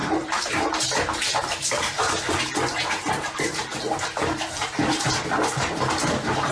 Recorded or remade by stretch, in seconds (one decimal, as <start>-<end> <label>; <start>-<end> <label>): 0.0-6.5 remade